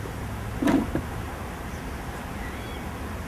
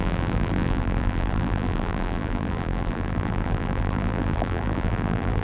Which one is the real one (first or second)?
first